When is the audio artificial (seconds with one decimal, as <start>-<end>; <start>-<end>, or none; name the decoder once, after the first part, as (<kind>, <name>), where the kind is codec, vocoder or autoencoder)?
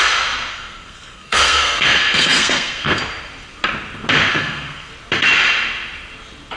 0.5-3.0 (codec, SNAC); 4.3-4.9